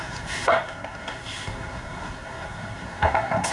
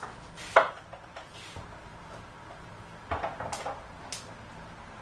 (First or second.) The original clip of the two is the second